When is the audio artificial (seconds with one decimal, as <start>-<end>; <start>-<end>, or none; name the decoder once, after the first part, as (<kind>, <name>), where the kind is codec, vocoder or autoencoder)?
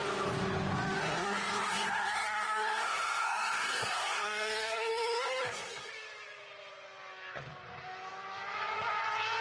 1.0-5.9 (codec, SNAC)